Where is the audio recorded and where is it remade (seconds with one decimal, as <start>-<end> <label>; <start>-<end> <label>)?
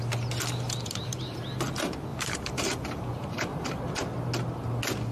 0.0-2.1 recorded; 2.1-3.8 remade; 3.8-5.1 recorded